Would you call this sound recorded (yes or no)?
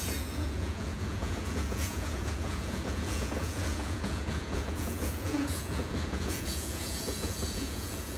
no